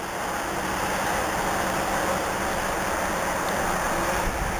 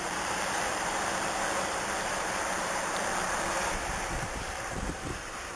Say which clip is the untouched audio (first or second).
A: first